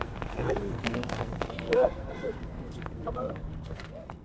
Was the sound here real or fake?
fake